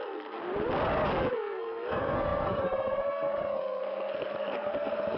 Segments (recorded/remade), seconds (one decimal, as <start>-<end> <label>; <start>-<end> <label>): 0.0-0.4 remade; 0.4-1.3 recorded; 1.3-5.2 remade